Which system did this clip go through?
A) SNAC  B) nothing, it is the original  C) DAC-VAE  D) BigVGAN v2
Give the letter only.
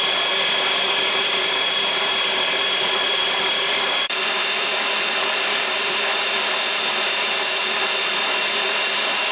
D